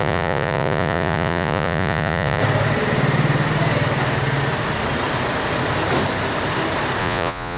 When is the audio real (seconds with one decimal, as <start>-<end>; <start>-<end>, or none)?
2.4-7.0